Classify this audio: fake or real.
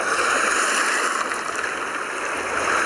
real